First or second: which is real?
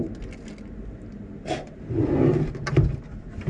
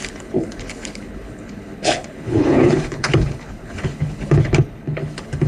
first